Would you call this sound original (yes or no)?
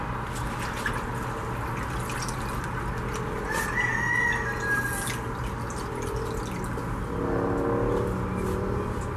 yes